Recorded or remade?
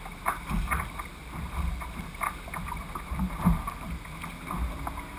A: recorded